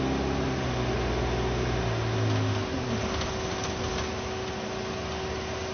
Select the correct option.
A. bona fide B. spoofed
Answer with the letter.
A